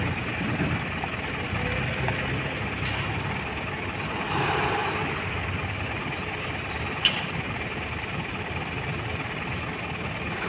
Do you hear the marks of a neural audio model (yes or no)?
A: no